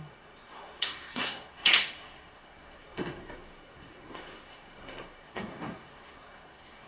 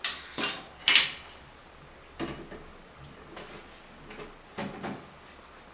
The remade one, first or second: first